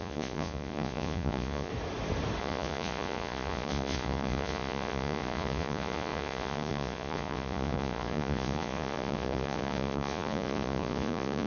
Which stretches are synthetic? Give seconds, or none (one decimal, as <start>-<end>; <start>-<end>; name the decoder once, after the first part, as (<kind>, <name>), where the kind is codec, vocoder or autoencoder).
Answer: 0.0-1.7 (vocoder, Vocos); 2.4-11.5